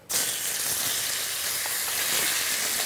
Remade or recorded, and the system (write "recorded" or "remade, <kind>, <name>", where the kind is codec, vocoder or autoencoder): recorded